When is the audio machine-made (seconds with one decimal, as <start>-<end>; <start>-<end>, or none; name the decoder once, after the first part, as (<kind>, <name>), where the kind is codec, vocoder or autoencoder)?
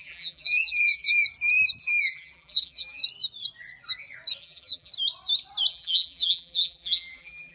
0.0-1.2 (vocoder, BigVGAN v2); 1.8-3.0; 4.4-4.9; 5.7-7.5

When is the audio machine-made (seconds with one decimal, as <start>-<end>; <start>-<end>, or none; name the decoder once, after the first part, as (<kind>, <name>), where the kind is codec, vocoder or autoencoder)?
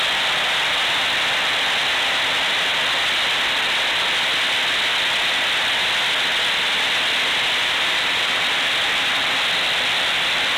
7.6-8.4 (vocoder, BigVGAN v2)